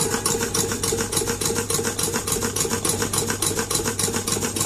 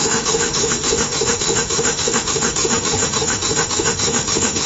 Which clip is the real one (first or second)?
first